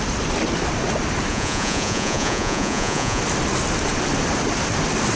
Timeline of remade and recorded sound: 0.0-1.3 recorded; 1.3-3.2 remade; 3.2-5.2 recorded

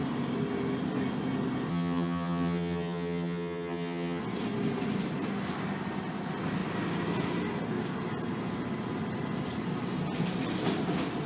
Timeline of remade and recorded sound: 0.0-1.7 recorded; 1.7-4.2 remade; 4.2-11.3 recorded

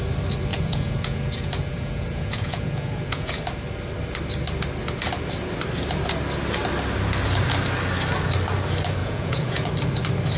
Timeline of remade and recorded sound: 0.0-0.5 recorded; 0.5-3.4 remade; 3.4-9.0 recorded; 9.0-9.7 remade; 9.7-10.4 recorded

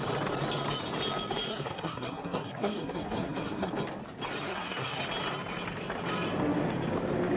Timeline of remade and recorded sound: 0.0-1.5 recorded; 1.5-3.7 remade; 3.7-4.4 recorded; 4.4-5.0 remade; 5.0-7.4 recorded

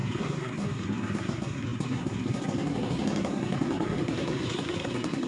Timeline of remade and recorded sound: 0.0-5.3 remade

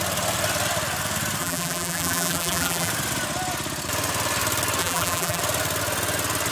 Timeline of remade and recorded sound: 0.0-1.4 recorded; 1.4-2.9 remade; 2.9-4.8 recorded; 4.8-5.4 remade; 5.4-6.5 recorded